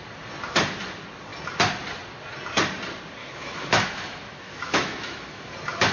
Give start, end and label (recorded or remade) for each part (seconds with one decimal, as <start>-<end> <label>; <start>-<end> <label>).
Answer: 0.0-3.2 recorded; 3.2-5.5 remade; 5.5-5.9 recorded